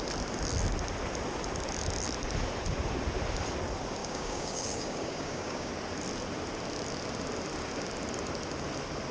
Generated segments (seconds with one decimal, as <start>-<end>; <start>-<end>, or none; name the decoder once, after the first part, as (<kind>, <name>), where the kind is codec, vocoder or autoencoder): 4.0-5.7 (codec, DAC)